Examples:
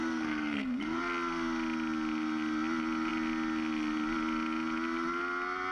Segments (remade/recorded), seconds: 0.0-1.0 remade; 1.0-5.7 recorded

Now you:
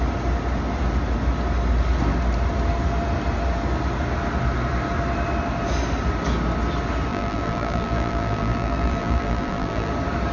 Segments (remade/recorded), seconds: 0.0-7.1 recorded; 7.1-9.9 remade; 9.9-10.3 recorded

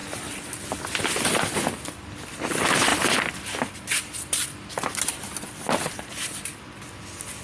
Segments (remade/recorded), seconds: 0.0-6.5 remade; 6.5-7.4 recorded

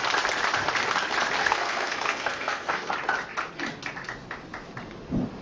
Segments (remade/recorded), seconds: 0.0-1.4 recorded; 1.4-2.9 remade; 2.9-5.4 recorded

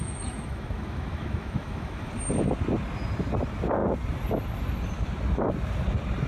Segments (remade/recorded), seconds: 0.0-2.1 remade; 2.1-6.3 recorded

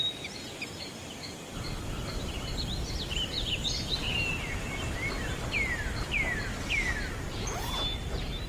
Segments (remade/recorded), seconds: 0.0-8.5 recorded